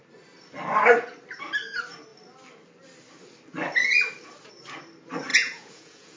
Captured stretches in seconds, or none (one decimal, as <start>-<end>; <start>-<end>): 0.0-5.3